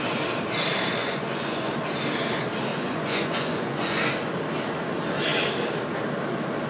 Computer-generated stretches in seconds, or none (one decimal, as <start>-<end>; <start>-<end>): 1.0-1.7; 2.7-4.0